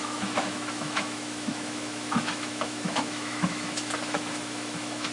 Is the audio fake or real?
fake